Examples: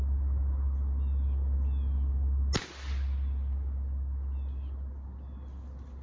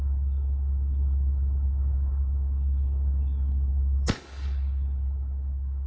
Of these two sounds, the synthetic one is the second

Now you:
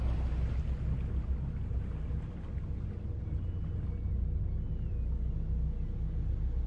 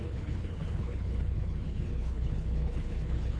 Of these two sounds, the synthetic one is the second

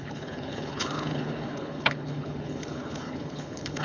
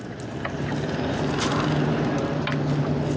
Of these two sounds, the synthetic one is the first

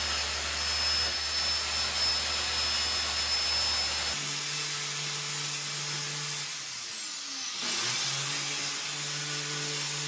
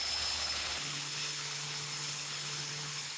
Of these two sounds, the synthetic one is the second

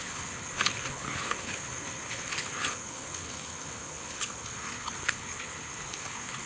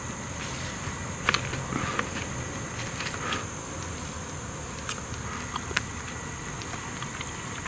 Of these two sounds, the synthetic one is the first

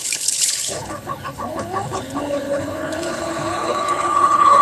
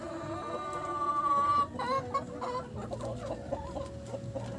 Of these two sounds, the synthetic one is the first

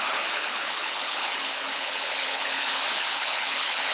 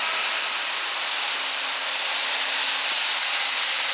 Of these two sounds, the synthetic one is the first